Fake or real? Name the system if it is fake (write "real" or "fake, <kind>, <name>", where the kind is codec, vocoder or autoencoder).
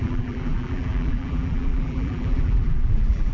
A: fake, vocoder, BigVGAN v2